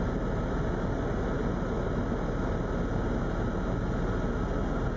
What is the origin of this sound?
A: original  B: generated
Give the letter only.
A